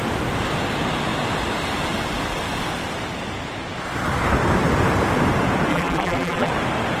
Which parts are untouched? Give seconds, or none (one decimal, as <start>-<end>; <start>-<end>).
0.0-5.7; 6.5-7.0